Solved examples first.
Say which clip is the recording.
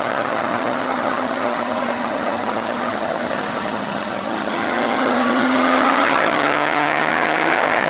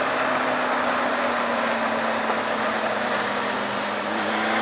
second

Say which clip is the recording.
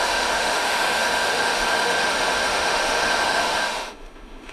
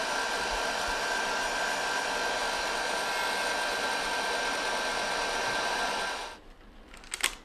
second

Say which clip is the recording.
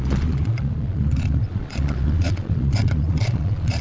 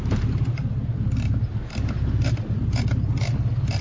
second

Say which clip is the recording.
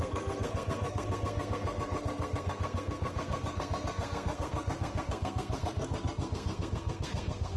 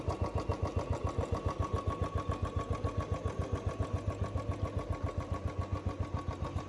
second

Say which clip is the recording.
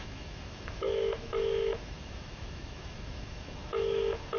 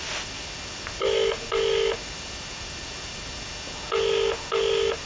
second